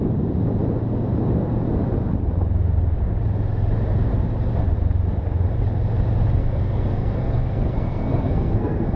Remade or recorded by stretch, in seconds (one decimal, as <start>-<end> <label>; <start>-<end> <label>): 0.0-6.4 recorded; 6.4-9.0 remade